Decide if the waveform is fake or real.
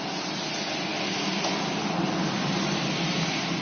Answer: real